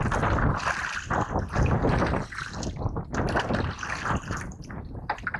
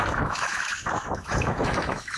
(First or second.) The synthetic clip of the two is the second